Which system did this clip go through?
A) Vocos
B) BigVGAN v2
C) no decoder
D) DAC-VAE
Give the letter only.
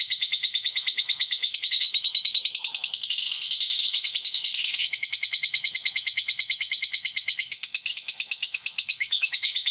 D